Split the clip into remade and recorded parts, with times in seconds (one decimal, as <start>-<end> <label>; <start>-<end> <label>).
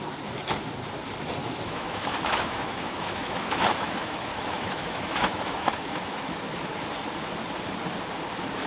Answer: 0.0-1.4 recorded; 1.4-6.4 remade; 6.4-8.7 recorded